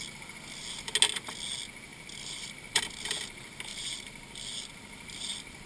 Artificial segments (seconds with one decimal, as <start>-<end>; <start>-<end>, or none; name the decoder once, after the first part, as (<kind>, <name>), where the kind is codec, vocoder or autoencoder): 1.9-2.8 (vocoder, BigVGAN v2); 3.7-5.7